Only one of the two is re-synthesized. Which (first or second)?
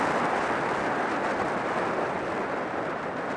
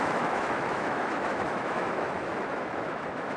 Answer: second